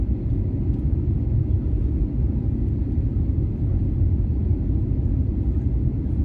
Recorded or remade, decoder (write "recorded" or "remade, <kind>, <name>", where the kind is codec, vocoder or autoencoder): recorded